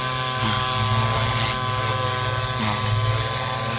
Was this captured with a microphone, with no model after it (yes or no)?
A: yes